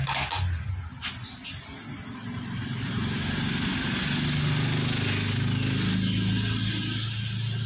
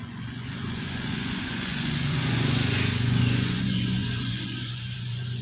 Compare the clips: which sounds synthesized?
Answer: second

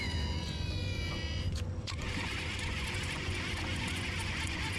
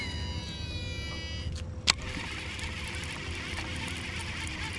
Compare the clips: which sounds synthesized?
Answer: first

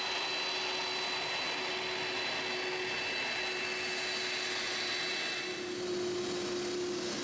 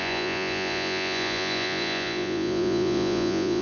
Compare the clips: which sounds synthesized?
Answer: second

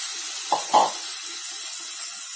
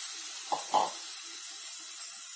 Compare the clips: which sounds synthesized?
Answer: first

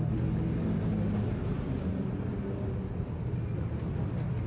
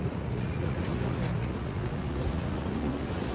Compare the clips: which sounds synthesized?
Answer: second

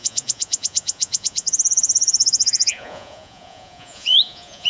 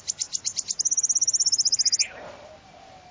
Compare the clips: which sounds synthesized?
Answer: first